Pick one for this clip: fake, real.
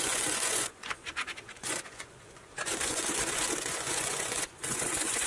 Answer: fake